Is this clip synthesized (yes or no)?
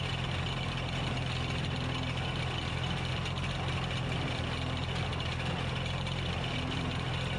no